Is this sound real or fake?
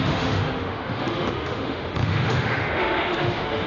fake